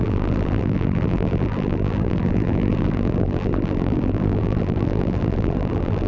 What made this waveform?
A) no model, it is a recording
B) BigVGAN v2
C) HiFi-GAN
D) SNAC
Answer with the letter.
B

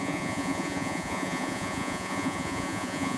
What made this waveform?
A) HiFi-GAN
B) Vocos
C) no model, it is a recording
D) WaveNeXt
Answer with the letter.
B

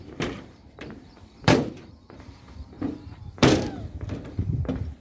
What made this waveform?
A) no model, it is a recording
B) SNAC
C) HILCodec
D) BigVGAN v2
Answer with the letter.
D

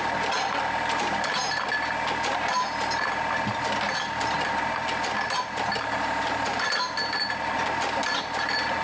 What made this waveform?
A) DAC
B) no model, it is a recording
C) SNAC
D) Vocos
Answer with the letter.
B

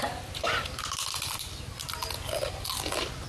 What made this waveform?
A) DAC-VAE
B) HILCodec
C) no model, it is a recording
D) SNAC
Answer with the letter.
C